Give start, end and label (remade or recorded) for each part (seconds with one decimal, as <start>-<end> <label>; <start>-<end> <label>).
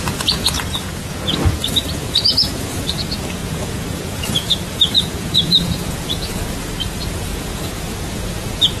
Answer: 0.0-8.8 remade